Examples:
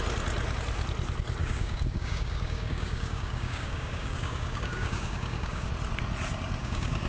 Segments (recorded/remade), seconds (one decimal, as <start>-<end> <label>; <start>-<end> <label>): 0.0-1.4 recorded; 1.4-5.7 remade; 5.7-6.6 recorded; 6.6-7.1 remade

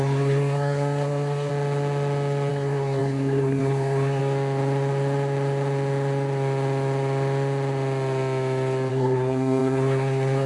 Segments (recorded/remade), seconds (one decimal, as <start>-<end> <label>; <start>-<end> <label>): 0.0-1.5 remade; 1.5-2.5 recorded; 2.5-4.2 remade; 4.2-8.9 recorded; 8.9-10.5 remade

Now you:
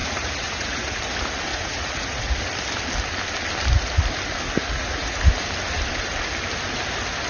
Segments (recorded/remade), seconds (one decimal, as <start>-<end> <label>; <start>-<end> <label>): 0.0-1.0 remade; 1.0-1.5 recorded; 1.5-2.4 remade; 2.4-4.6 recorded; 4.6-5.2 remade; 5.2-7.3 recorded